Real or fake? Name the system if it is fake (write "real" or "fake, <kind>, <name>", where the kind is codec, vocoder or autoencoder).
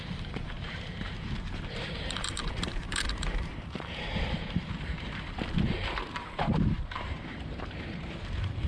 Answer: fake, vocoder, BigVGAN v2